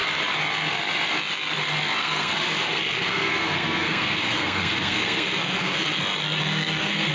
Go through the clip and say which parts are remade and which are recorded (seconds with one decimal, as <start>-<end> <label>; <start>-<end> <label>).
0.0-2.0 recorded; 2.0-6.0 remade; 6.0-6.4 recorded; 6.4-7.1 remade